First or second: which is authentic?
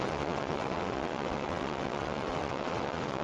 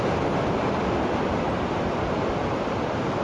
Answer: second